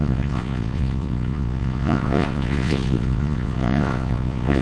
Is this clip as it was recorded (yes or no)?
no